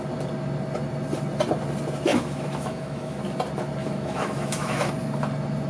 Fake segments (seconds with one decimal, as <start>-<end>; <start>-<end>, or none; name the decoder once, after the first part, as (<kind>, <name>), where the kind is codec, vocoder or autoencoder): 2.1-3.2 (autoencoder, DAC-VAE); 3.8-4.9